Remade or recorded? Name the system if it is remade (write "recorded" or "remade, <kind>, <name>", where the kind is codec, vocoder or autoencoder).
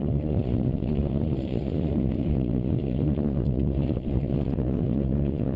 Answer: remade, vocoder, Vocos